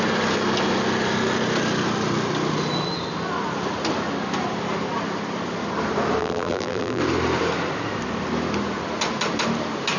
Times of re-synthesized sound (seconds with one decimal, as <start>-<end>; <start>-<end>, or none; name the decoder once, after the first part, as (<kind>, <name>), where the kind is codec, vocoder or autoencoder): 6.2-7.0 (vocoder, BigVGAN v2)